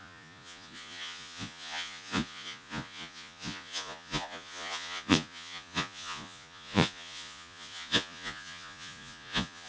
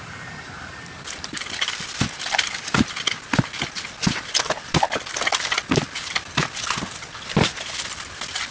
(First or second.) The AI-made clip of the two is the first